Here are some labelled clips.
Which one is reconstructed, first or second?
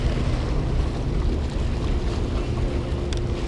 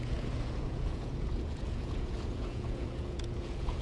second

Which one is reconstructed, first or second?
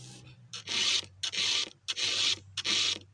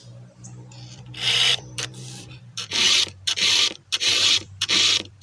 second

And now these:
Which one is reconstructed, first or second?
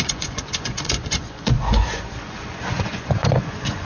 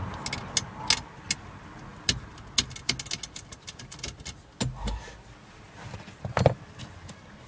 first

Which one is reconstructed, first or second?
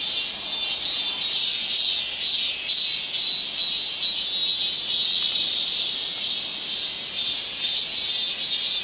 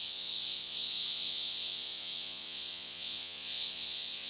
second